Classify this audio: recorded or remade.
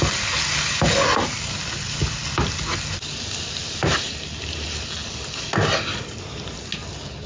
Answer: recorded